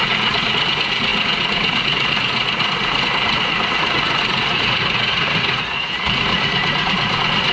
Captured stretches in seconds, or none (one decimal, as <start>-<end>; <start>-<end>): none